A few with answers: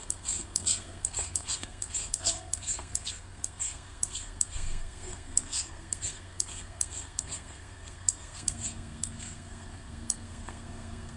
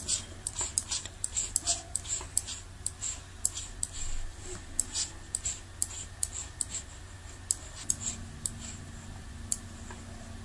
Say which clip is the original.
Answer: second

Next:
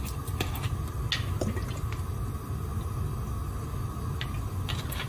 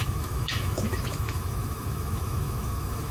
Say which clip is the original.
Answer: first